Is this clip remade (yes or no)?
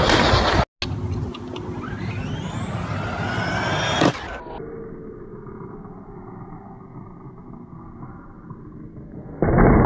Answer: no